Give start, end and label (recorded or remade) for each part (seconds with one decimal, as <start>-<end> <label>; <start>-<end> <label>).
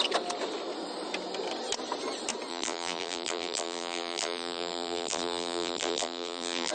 0.0-2.5 recorded; 2.5-6.7 remade